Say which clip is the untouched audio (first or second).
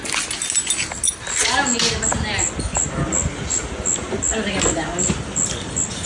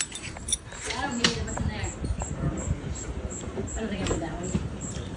first